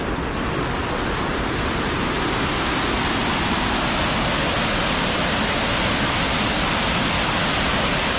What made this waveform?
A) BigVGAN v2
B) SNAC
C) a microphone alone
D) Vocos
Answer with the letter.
C